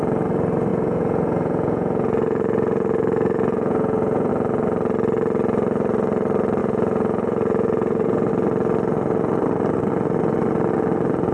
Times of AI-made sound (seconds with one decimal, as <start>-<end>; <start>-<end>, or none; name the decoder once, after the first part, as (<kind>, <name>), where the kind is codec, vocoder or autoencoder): 0.7-4.3 (vocoder, Vocos); 6.6-8.3